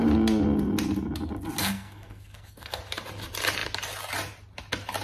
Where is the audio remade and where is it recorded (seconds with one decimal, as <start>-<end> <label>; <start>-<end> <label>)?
0.0-1.6 recorded; 1.6-2.8 remade; 2.8-5.0 recorded